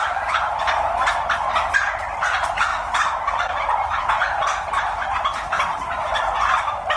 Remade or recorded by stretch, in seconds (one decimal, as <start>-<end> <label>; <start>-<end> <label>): 0.0-2.7 recorded; 2.7-4.0 remade; 4.0-5.3 recorded; 5.3-5.9 remade; 5.9-7.0 recorded